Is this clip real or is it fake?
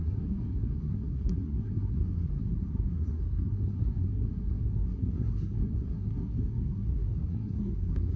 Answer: fake